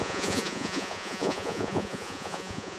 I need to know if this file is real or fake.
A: fake